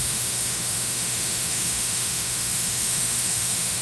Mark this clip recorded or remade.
remade